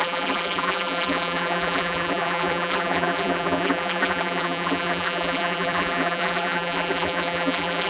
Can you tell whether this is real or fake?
fake